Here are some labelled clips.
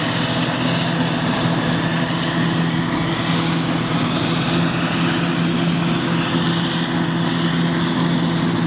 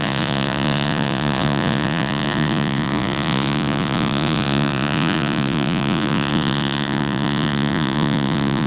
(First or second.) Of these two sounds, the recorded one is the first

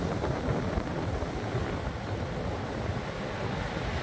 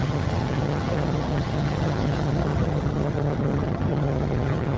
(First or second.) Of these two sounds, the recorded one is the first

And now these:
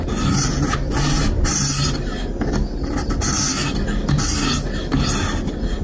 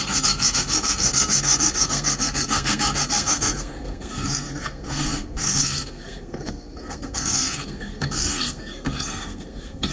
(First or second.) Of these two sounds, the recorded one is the first